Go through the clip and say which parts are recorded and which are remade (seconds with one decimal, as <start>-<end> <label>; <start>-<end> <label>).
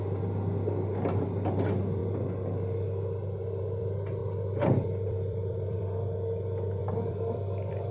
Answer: 0.0-4.2 recorded; 4.2-5.8 remade; 5.8-6.8 recorded; 6.8-7.9 remade